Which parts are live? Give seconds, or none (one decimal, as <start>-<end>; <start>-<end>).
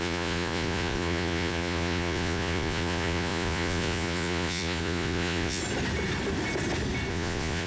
5.6-7.1